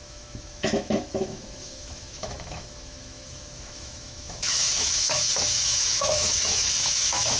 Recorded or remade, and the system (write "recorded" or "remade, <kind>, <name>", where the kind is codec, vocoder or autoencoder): remade, autoencoder, DAC-VAE